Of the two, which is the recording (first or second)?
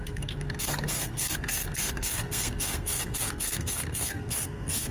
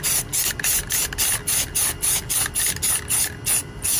second